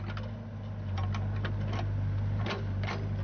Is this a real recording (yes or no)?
yes